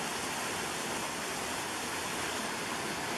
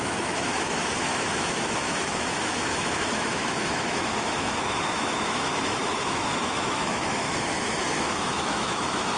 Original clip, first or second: first